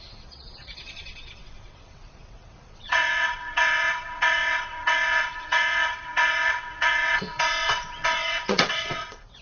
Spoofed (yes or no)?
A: yes